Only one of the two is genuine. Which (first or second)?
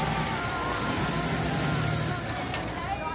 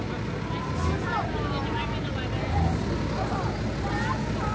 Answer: second